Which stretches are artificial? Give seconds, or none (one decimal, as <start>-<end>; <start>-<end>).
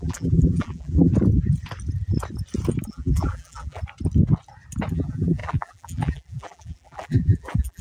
0.0-1.1; 2.9-3.8; 4.9-7.8